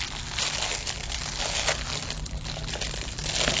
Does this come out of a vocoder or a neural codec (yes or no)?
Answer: no